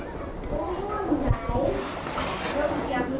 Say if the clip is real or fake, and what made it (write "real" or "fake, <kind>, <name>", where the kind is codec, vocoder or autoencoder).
real